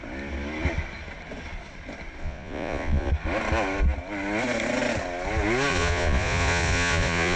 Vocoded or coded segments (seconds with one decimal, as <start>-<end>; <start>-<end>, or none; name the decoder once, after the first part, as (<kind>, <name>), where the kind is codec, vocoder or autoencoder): 2.2-3.1 (vocoder, Vocos); 5.7-7.4